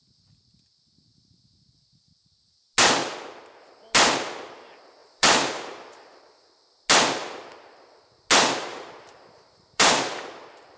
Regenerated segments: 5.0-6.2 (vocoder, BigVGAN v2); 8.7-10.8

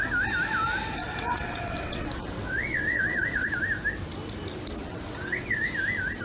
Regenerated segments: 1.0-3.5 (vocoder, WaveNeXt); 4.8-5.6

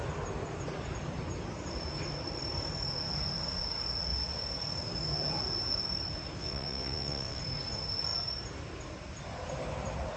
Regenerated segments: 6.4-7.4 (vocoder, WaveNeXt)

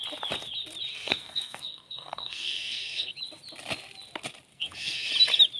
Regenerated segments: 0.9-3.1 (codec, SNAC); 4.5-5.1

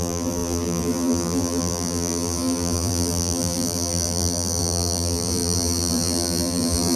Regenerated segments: 0.0-7.0 (vocoder, BigVGAN v2)

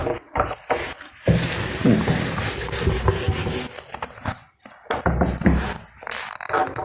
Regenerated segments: none

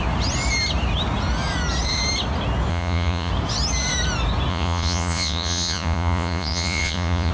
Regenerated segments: 2.7-3.3 (vocoder, Vocos); 4.5-7.3